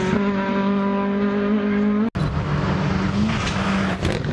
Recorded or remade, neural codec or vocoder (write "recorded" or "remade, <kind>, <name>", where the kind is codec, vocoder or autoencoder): recorded